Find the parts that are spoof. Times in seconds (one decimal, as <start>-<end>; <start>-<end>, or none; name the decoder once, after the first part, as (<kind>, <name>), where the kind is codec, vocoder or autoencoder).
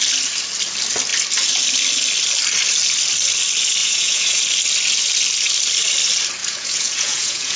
3.8-4.4 (vocoder, Vocos); 6.4-7.6